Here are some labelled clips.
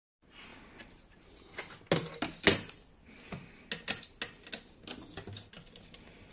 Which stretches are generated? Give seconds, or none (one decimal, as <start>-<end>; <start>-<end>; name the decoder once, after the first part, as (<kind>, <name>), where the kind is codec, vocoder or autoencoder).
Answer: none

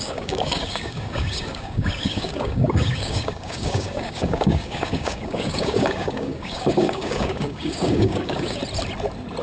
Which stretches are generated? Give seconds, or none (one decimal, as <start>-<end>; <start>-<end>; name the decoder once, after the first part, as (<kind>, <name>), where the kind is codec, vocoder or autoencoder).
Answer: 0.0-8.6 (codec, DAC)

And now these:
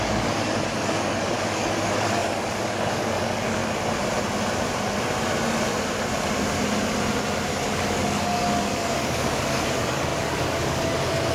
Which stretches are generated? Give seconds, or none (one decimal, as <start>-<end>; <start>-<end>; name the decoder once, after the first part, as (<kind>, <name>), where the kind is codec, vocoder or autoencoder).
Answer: 0.0-3.6 (codec, DAC); 7.5-11.3

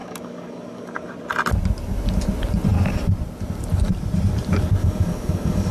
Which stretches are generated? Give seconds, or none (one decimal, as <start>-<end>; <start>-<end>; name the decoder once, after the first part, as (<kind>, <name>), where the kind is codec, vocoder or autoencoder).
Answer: 0.0-1.1 (codec, DAC); 4.8-5.7